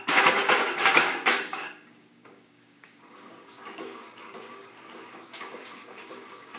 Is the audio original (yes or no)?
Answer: no